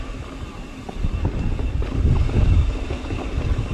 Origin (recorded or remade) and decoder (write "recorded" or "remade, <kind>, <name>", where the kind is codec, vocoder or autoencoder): recorded